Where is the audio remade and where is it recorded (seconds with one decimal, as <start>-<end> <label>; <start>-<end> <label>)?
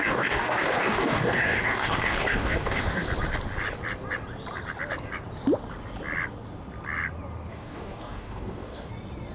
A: 0.0-3.1 remade; 3.1-7.5 recorded; 7.5-8.9 remade; 8.9-9.3 recorded